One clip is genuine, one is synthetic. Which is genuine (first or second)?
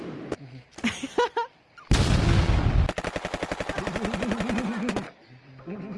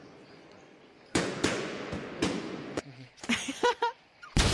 first